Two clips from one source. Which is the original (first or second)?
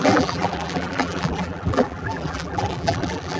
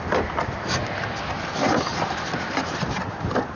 second